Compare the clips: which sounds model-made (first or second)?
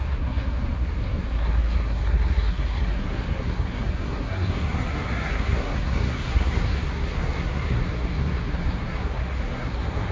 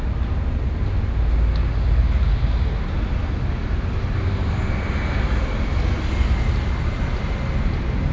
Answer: first